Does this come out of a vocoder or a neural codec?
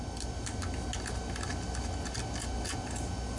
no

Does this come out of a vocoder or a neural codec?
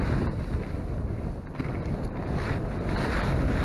no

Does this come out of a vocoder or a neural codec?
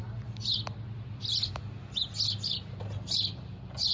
no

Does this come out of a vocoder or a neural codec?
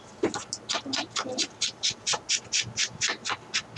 no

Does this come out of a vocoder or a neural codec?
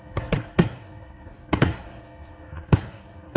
yes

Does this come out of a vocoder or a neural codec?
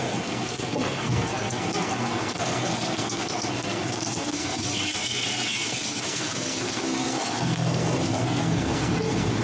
yes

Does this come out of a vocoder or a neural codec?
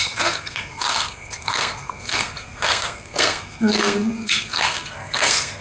yes